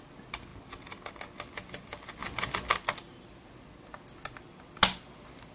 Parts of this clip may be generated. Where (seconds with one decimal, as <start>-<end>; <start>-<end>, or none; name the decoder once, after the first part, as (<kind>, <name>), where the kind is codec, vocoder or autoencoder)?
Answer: none